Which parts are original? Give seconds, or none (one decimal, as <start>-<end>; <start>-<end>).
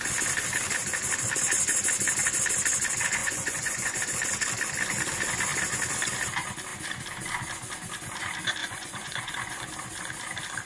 0.0-3.2; 4.0-8.6; 9.6-10.7